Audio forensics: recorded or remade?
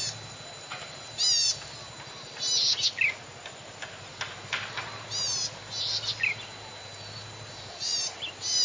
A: recorded